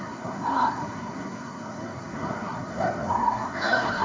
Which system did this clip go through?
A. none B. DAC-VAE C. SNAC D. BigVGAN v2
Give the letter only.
C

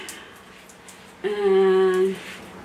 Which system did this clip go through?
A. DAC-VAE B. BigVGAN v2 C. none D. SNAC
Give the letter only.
C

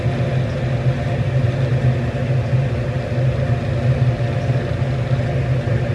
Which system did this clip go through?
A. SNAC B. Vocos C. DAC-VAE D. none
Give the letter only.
D